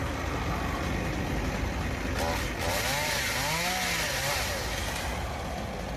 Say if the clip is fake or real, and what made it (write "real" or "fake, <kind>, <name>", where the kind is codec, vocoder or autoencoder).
real